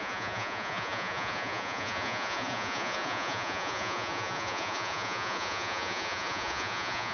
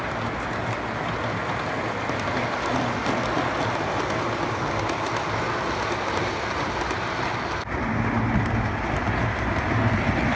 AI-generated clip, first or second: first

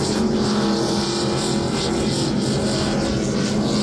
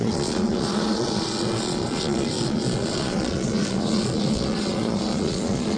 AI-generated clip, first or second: second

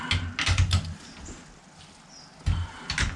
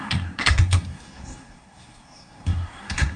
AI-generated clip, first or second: second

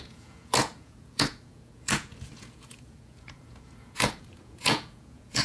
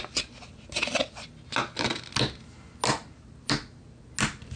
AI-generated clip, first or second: first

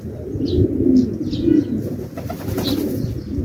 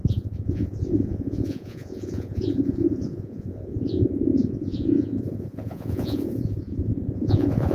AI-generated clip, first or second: second